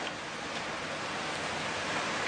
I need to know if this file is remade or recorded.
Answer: recorded